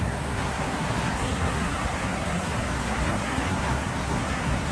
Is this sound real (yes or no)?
no